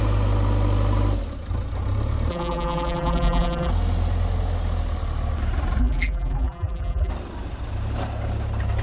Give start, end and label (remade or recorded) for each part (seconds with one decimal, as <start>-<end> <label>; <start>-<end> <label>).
0.0-2.3 recorded; 2.3-3.7 remade; 3.7-5.8 recorded; 5.8-7.1 remade; 7.1-8.8 recorded